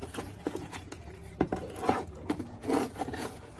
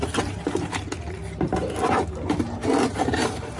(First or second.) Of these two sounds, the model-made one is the first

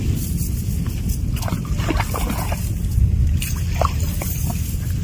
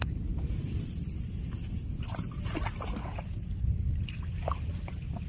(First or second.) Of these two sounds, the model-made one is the second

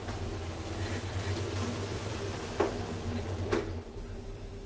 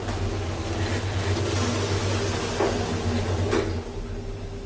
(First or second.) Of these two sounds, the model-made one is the first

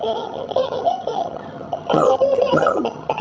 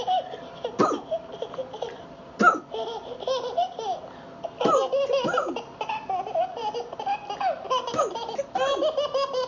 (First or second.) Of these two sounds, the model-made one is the first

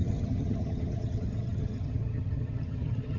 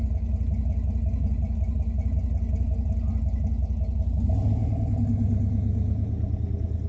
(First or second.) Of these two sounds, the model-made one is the first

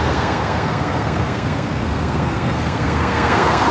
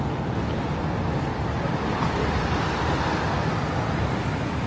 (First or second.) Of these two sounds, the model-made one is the first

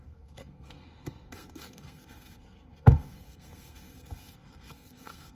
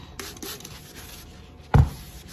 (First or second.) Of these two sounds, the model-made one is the first